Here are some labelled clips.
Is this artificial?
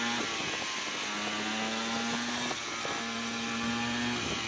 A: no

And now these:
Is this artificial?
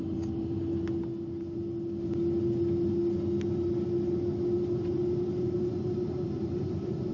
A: no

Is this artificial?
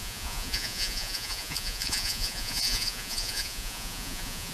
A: yes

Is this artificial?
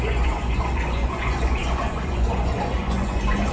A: yes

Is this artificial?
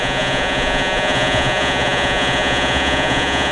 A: yes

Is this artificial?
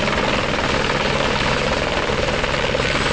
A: no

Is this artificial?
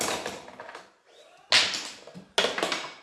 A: no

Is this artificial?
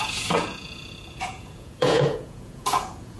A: yes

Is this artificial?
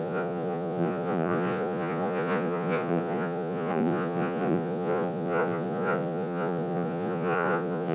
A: yes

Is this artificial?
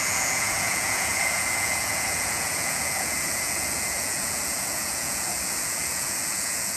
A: yes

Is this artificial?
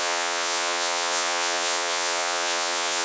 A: yes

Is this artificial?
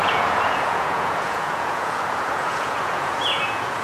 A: yes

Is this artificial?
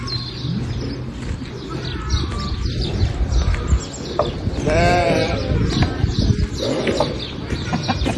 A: no